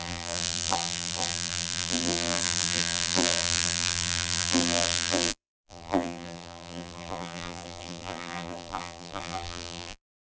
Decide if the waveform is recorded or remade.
remade